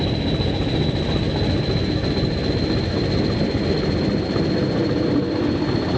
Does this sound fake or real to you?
real